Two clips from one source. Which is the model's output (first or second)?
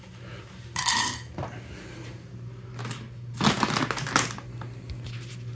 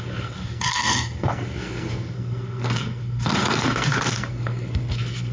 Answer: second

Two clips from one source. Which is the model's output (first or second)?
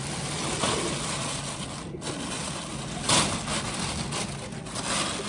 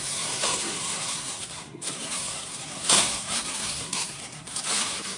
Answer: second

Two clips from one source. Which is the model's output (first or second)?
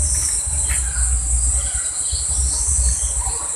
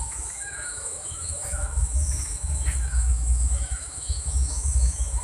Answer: second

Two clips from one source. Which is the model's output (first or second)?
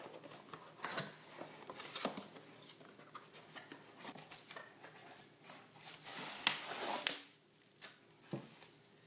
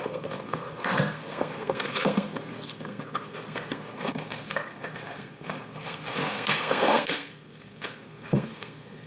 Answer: second